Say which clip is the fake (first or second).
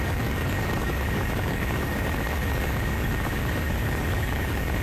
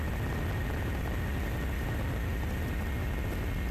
first